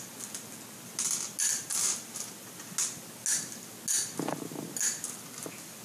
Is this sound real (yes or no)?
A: yes